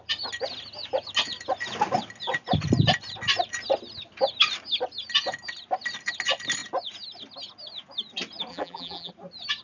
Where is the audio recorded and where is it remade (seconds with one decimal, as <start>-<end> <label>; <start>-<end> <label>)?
0.0-8.5 recorded; 8.5-9.1 remade; 9.1-9.6 recorded